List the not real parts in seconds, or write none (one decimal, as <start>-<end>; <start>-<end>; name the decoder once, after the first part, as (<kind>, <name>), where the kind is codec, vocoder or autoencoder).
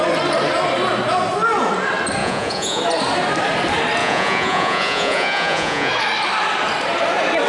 2.2-2.8 (vocoder, Vocos); 4.0-5.9